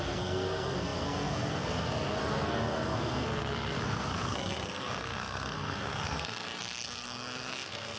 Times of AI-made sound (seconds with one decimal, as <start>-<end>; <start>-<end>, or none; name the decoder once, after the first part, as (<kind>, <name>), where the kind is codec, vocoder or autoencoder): 0.0-8.0 (codec, SNAC)